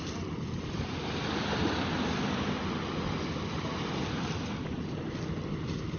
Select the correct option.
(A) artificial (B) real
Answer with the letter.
B